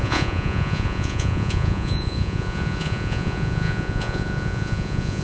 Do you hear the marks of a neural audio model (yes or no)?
yes